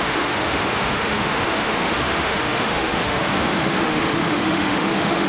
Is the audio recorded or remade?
remade